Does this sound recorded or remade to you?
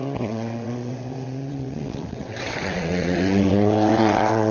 remade